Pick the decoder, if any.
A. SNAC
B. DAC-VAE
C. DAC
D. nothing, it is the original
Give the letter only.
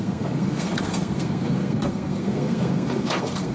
A